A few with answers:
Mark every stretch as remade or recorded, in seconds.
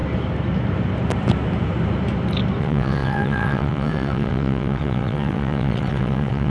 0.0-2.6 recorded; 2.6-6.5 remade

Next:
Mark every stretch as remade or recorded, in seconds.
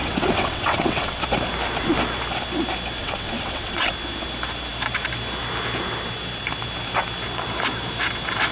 0.0-1.2 remade; 1.2-3.0 recorded; 3.0-3.9 remade; 3.9-8.5 recorded